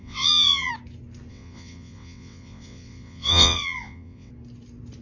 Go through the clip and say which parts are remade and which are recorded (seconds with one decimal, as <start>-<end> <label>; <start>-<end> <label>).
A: 0.0-0.7 remade; 0.7-1.3 recorded; 1.3-4.3 remade; 4.3-5.0 recorded